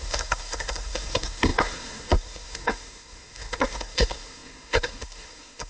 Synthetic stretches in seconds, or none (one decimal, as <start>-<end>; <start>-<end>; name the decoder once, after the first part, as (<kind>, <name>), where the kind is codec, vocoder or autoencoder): 0.0-5.7 (codec, SNAC)